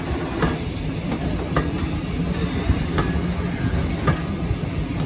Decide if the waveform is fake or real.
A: real